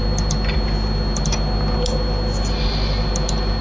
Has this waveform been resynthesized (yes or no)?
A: no